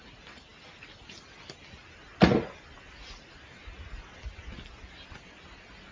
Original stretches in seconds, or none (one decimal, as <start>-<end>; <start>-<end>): 0.0-5.9

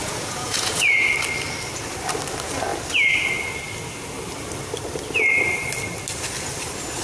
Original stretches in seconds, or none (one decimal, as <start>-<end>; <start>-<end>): 1.1-7.0